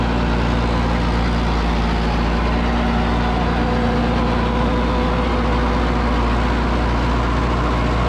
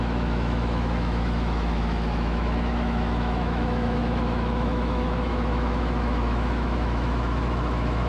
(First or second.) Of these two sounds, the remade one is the second